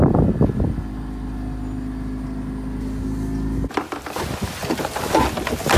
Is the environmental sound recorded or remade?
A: recorded